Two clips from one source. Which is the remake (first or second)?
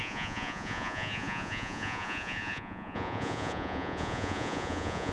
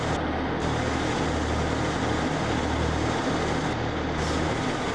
first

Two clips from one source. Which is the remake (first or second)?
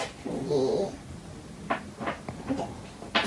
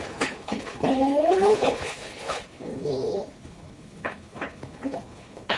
second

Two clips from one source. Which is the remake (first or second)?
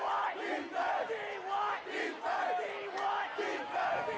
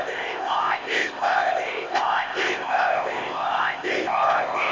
second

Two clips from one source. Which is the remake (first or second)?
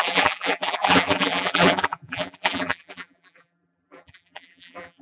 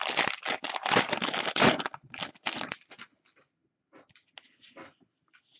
first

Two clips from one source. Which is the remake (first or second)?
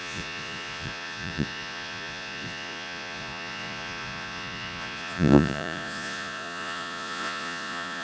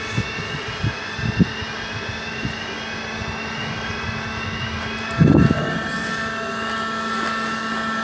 first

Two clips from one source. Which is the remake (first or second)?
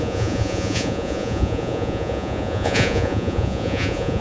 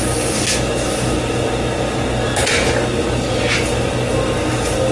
first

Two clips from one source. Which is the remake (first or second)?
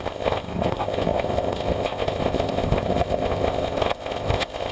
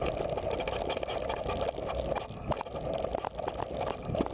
first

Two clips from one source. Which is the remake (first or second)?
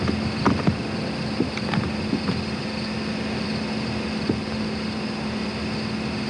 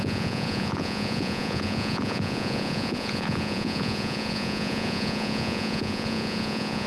second